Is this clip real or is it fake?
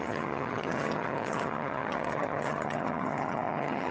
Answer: fake